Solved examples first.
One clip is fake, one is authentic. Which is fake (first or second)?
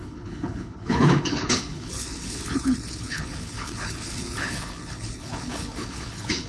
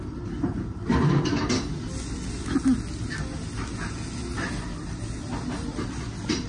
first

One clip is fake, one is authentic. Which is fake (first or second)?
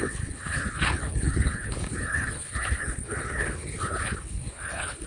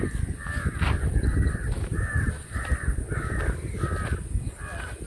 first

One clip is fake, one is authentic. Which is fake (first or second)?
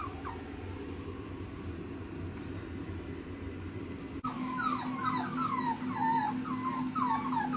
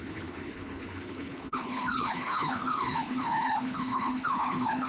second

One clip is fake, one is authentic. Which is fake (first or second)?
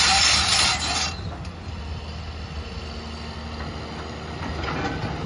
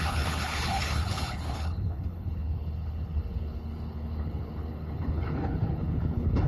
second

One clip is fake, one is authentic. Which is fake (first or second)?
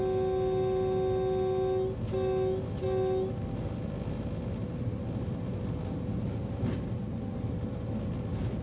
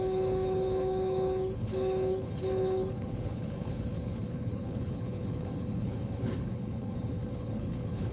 second